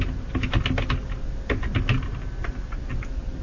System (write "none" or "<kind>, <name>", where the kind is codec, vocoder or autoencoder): none